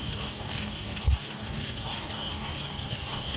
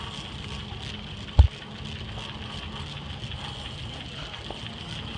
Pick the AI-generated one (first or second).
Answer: first